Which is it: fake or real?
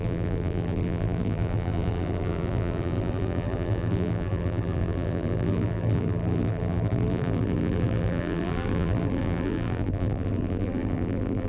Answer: fake